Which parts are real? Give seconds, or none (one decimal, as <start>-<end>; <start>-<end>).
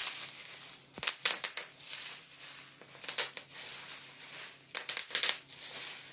0.0-6.1